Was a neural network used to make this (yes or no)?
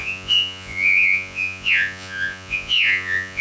yes